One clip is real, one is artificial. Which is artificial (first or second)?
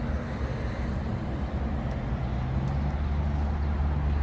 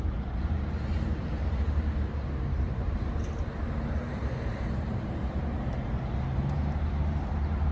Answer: second